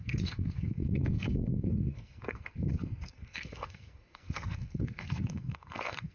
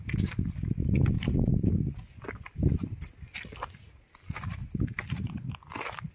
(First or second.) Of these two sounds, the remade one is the first